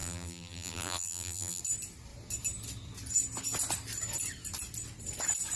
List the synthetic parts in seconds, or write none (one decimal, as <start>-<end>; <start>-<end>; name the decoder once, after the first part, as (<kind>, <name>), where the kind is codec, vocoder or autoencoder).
0.0-1.6 (vocoder, BigVGAN v2)